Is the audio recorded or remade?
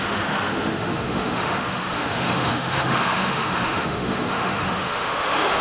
remade